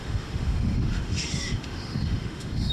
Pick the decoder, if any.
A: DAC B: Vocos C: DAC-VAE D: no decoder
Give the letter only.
C